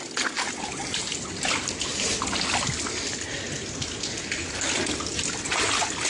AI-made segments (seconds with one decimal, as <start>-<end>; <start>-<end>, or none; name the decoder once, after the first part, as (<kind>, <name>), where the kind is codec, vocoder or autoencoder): none